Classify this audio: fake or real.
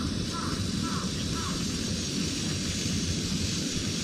real